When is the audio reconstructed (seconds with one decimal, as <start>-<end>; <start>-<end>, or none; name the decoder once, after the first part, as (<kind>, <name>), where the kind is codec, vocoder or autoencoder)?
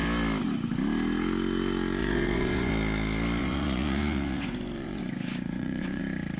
2.0-2.7 (vocoder, Vocos); 3.4-6.0